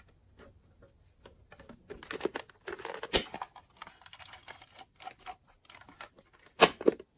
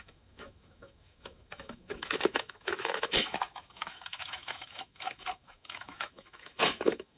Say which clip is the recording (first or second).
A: first